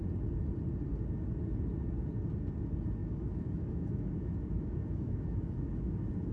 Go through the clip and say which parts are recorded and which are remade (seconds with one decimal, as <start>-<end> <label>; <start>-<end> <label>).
0.0-3.0 recorded; 3.0-5.8 remade; 5.8-6.3 recorded

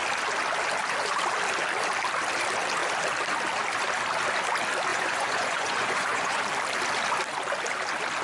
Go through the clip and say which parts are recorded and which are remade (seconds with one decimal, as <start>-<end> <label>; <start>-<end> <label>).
0.0-4.9 recorded; 4.9-6.4 remade; 6.4-8.2 recorded

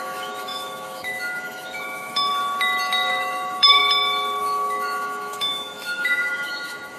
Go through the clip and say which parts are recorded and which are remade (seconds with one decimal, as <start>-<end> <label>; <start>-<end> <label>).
0.0-2.3 remade; 2.3-3.1 recorded; 3.1-3.8 remade; 3.8-4.4 recorded; 4.4-7.0 remade

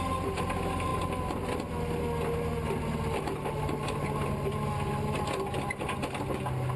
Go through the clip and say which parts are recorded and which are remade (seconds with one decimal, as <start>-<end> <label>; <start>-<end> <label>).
0.0-6.8 recorded

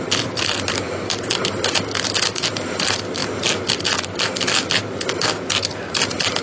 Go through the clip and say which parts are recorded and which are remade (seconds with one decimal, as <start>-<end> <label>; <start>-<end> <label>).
0.0-6.4 recorded

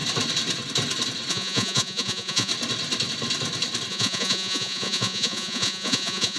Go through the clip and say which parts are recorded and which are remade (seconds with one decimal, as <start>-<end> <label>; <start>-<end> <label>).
0.0-1.3 recorded; 1.3-2.5 remade; 2.5-3.9 recorded; 3.9-6.4 remade

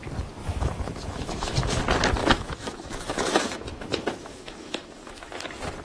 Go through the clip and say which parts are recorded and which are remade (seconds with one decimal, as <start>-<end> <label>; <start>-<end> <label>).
0.0-0.4 recorded; 0.4-1.8 remade; 1.8-2.2 recorded; 2.2-5.3 remade; 5.3-5.8 recorded